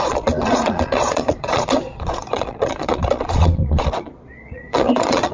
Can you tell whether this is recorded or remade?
remade